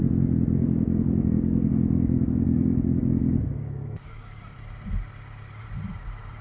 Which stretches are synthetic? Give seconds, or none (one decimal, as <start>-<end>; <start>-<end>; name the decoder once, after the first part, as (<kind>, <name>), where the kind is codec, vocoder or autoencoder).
0.6-4.4 (codec, DAC)